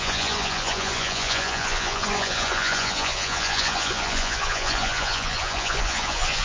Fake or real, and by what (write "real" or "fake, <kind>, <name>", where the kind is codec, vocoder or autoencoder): fake, vocoder, Vocos